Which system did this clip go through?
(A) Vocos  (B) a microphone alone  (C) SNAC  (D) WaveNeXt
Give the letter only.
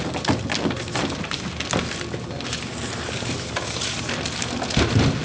B